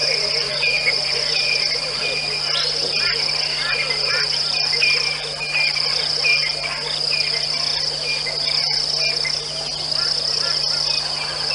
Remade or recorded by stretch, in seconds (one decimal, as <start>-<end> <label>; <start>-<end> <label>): 0.0-2.0 remade; 2.0-11.5 recorded